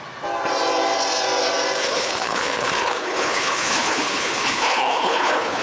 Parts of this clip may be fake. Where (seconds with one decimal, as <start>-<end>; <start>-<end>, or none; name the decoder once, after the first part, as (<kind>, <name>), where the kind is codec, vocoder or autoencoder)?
1.8-5.6 (codec, HILCodec)